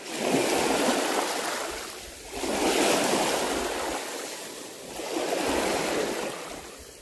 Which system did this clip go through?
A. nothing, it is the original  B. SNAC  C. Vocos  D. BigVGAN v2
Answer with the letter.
A